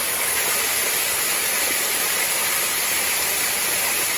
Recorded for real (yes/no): yes